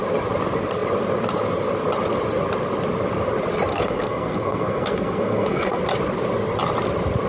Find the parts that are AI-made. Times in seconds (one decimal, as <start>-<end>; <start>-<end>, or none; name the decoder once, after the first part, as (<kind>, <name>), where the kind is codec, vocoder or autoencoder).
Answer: 3.7-5.8 (codec, SNAC)